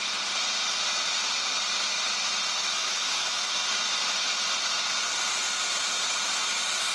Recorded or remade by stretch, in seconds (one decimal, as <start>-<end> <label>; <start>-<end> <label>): 0.0-2.6 recorded; 2.6-3.5 remade; 3.5-6.9 recorded